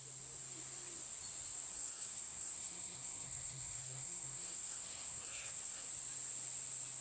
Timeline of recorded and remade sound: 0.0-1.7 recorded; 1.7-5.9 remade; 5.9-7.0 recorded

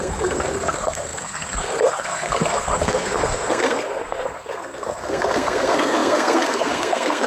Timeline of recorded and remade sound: 0.0-7.3 remade

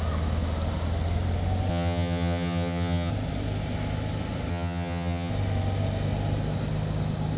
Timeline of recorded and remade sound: 0.0-1.7 recorded; 1.7-3.1 remade; 3.1-4.5 recorded; 4.5-5.3 remade; 5.3-7.4 recorded

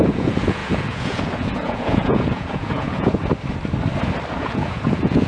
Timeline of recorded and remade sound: 0.0-3.2 remade; 3.2-4.3 recorded; 4.3-5.3 remade

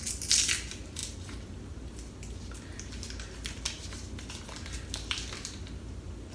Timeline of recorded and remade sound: 0.0-6.3 recorded